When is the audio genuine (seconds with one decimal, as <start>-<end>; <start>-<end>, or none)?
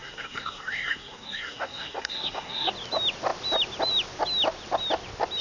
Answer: 2.7-5.4